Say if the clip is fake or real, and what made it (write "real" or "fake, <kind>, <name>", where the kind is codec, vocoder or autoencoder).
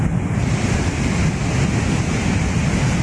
real